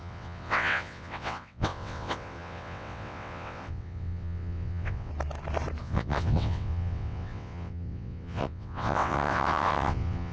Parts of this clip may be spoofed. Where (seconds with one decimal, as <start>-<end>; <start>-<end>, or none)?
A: 0.0-5.1; 5.8-10.3